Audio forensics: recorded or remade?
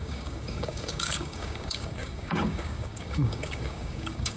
remade